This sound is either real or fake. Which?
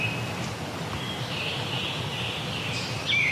real